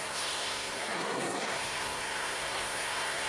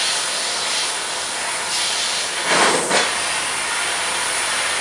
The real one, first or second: second